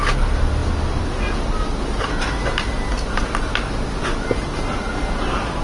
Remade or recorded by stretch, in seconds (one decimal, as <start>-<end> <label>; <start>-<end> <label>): 0.0-5.6 recorded